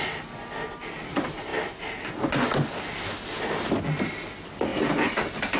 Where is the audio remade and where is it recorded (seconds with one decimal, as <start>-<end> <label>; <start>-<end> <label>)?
0.0-5.6 recorded